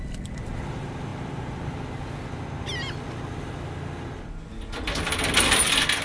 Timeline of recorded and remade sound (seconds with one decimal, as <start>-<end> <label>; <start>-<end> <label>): 0.0-6.0 recorded